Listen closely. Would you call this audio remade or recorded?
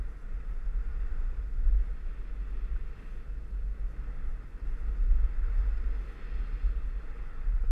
recorded